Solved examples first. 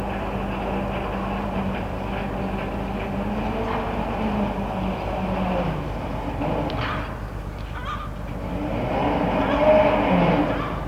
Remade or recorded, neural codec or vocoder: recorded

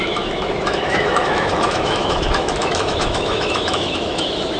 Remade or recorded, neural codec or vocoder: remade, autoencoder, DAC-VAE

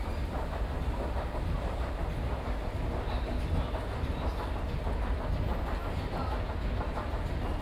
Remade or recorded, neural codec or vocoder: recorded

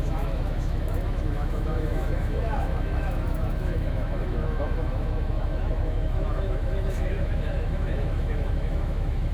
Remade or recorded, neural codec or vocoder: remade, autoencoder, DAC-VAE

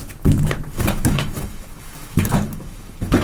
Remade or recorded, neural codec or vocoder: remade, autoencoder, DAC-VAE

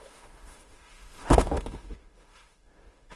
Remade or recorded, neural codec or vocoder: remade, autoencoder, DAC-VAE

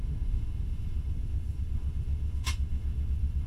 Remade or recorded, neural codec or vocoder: remade, autoencoder, DAC-VAE